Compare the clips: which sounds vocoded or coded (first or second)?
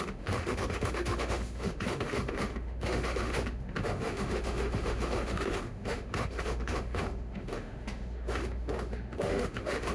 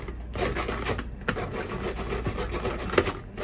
first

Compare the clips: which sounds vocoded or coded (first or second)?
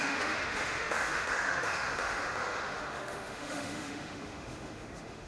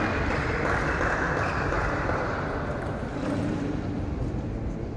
first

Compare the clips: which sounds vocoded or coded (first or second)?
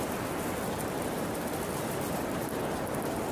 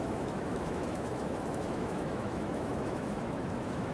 second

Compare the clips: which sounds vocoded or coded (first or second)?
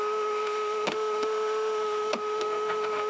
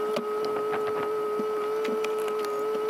first